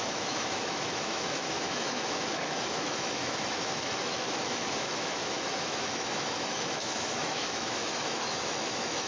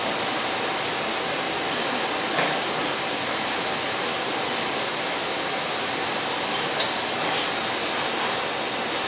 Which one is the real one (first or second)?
second